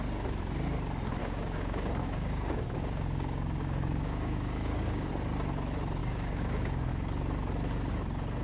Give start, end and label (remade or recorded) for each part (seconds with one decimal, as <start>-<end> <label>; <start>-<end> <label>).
0.0-1.2 recorded; 1.2-5.1 remade; 5.1-6.0 recorded; 6.0-6.9 remade; 6.9-8.4 recorded